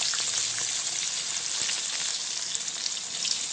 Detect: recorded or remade recorded